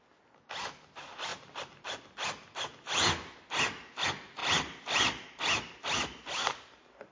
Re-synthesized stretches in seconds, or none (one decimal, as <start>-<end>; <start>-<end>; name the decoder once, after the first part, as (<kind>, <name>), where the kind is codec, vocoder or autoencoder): none